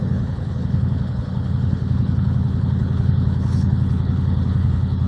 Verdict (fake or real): fake